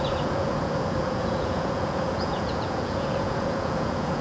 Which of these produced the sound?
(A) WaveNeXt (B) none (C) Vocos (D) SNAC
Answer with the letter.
C